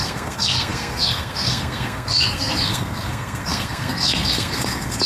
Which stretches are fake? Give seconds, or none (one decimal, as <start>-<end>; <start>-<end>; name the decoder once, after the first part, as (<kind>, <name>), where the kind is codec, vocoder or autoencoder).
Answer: 0.0-5.1 (codec, SNAC)